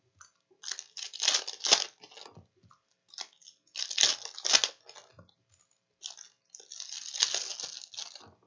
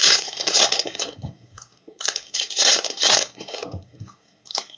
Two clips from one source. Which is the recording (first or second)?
first